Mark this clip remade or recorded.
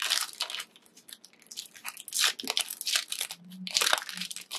recorded